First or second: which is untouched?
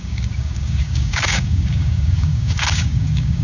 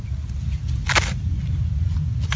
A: second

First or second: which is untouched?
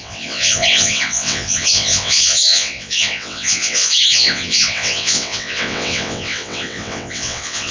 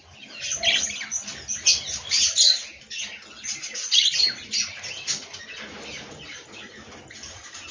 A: second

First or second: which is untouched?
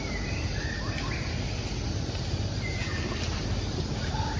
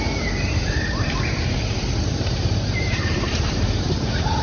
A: first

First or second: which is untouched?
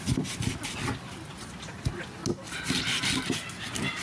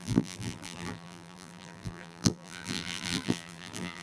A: first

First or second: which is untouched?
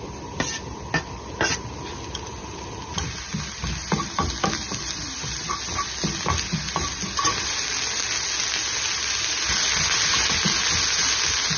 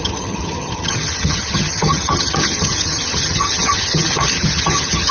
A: first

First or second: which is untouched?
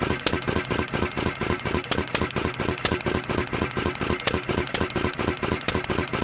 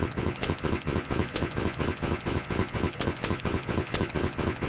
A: first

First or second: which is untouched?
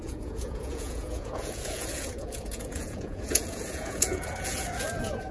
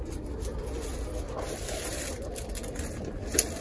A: second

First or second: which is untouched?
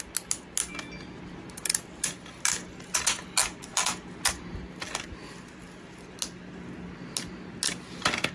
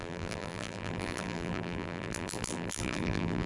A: first